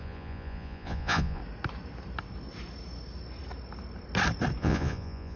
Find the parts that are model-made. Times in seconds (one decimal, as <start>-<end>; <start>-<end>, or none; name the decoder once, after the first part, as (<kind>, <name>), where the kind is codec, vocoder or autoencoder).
0.0-1.4 (vocoder, Vocos); 4.6-5.4